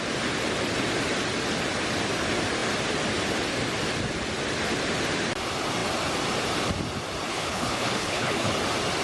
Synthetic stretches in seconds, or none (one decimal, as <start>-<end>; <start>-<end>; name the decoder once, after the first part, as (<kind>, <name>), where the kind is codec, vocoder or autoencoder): 7.3-8.5 (codec, HILCodec)